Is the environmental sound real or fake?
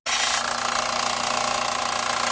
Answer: real